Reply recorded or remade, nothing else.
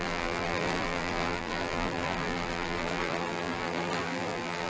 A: remade